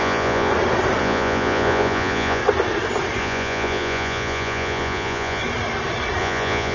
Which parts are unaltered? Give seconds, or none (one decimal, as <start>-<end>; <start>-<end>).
0.5-1.0; 2.4-3.2; 5.4-6.2